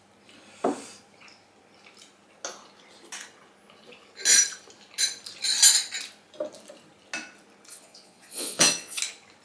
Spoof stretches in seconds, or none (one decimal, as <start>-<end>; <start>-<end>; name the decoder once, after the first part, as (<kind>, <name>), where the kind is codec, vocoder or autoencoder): 7.7-9.0 (vocoder, Vocos)